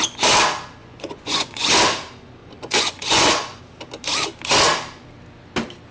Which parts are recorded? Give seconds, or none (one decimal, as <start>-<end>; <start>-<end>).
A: 0.0-0.8; 1.7-2.4; 3.6-5.9